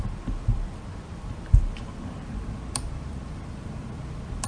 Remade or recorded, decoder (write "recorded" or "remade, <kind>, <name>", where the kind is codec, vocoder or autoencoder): remade, vocoder, BigVGAN v2